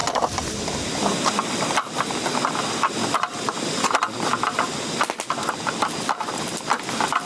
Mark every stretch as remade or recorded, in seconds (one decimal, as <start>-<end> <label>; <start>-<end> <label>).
0.0-7.3 recorded

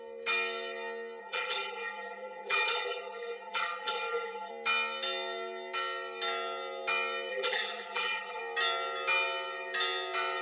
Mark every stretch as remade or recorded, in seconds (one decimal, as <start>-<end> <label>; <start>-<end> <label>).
0.0-1.2 recorded; 1.2-4.5 remade; 4.5-7.3 recorded; 7.3-8.4 remade; 8.4-10.4 recorded